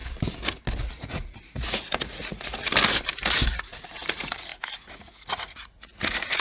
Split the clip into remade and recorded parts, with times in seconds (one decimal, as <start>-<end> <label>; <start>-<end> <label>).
0.0-0.8 recorded; 0.8-2.7 remade; 2.7-3.5 recorded; 3.5-6.4 remade